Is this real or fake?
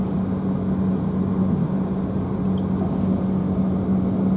real